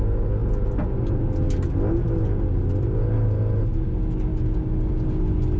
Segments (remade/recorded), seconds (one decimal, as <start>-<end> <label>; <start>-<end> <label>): 0.0-5.6 recorded